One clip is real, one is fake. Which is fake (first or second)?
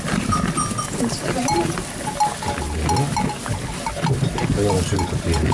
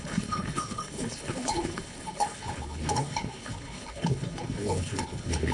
second